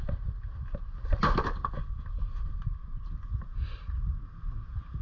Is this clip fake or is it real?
real